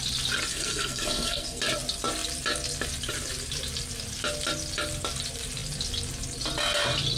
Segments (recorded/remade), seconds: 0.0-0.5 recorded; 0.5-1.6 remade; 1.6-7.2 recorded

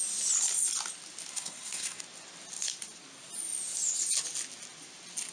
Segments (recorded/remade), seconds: 0.0-1.3 recorded; 1.3-2.0 remade; 2.0-5.3 recorded

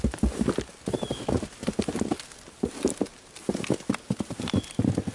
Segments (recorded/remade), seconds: 0.0-5.1 recorded